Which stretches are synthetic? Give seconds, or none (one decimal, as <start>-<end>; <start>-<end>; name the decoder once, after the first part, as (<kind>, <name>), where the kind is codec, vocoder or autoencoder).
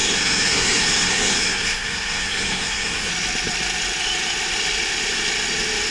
0.0-3.1 (codec, SNAC)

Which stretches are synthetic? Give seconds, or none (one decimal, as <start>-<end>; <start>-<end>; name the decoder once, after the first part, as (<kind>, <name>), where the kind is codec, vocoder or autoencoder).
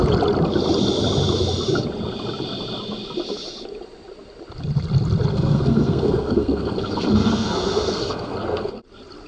5.3-8.8 (codec, SNAC)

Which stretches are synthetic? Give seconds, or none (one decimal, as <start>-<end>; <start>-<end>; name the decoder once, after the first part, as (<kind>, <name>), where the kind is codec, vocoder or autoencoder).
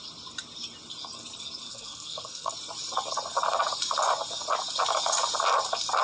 1.7-2.5 (codec, SNAC)